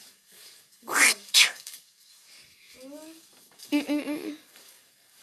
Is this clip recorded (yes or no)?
no